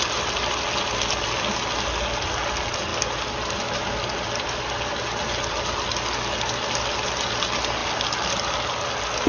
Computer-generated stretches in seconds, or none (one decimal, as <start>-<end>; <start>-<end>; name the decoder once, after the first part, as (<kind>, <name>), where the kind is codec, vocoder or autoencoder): none